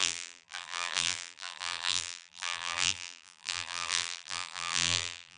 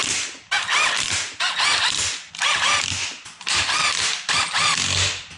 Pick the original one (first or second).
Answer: second